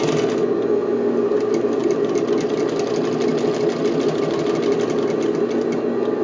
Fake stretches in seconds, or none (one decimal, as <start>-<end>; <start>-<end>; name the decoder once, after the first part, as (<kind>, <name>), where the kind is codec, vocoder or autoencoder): none